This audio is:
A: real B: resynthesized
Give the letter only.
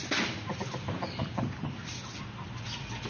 A